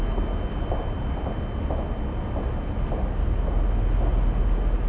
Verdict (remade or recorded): recorded